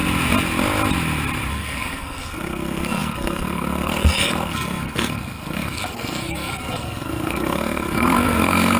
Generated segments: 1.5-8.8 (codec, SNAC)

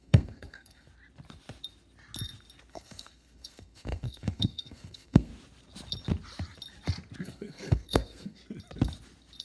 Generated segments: 0.0-0.9 (codec, SNAC); 2.7-5.3; 7.2-8.4

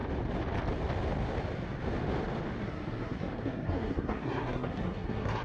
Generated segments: 2.6-5.4 (codec, SNAC)

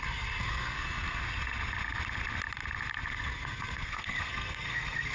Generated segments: 0.0-1.2 (codec, SNAC); 3.1-5.1

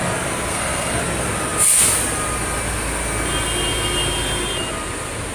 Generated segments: 0.5-1.0 (codec, SNAC)

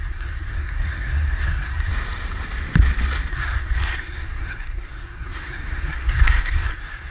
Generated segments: 0.0-1.9 (codec, SNAC); 3.3-7.1

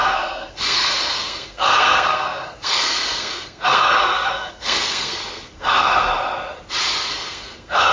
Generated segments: 0.0-6.1 (codec, SNAC); 7.1-7.9

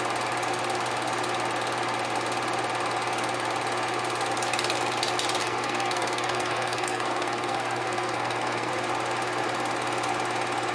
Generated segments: 5.4-8.7 (codec, SNAC)